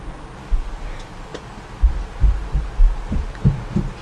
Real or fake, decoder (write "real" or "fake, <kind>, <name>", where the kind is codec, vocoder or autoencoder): real